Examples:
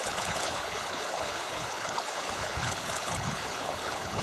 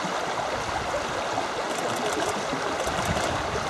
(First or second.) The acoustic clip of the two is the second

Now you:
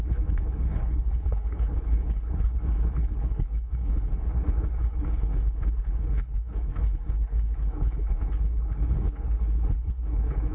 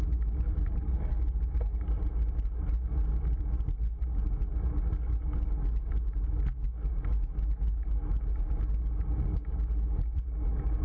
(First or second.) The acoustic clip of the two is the second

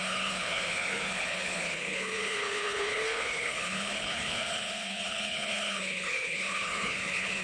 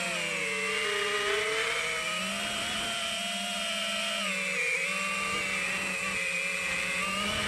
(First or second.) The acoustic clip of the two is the second